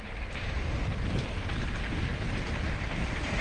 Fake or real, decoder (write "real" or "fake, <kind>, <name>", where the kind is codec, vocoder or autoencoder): fake, vocoder, BigVGAN v2